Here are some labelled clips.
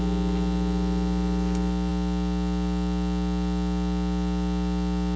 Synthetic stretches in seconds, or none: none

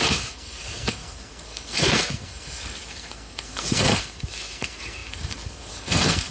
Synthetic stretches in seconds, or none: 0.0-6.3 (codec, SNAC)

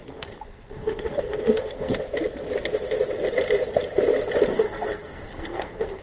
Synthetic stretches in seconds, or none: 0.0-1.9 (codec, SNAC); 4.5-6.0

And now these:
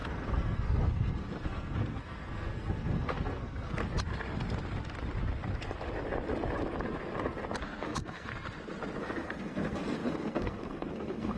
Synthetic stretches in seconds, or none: 0.0-3.8 (codec, SNAC); 7.6-8.3; 9.0-11.4

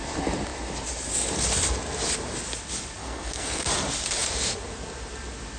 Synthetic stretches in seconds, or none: 3.0-3.7 (codec, SNAC)

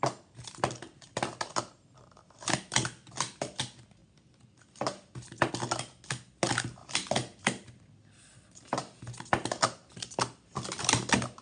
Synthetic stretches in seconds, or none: none